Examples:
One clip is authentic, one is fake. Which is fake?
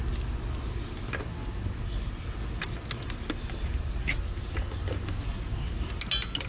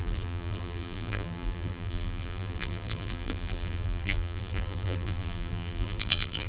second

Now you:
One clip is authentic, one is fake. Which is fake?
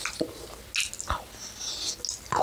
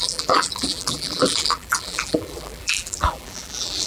second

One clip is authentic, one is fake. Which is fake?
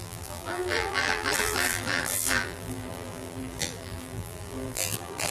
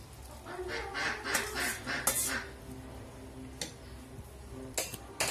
first